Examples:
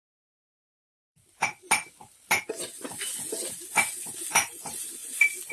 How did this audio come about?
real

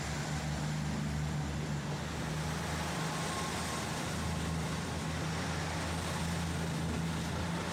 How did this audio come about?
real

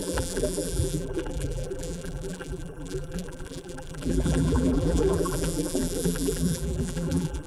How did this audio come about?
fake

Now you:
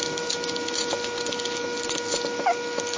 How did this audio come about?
real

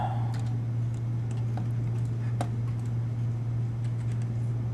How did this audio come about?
real